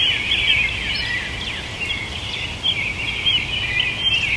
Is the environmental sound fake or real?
real